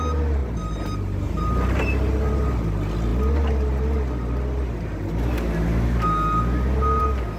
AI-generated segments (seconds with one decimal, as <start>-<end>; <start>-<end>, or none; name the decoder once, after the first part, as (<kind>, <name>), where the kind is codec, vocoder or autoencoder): 0.4-2.3 (vocoder, BigVGAN v2)